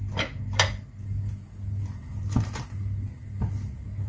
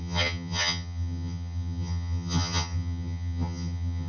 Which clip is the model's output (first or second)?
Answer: second